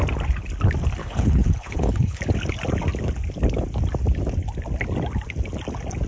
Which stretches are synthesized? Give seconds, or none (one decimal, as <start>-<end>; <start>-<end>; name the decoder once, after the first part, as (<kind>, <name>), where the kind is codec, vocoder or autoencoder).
1.0-2.2 (codec, HILCodec)